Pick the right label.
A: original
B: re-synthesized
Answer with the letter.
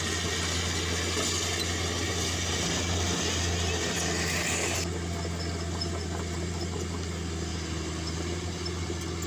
A